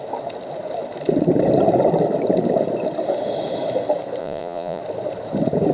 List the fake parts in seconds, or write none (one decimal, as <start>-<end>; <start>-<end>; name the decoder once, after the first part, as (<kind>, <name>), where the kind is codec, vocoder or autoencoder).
4.2-4.8 (vocoder, Vocos)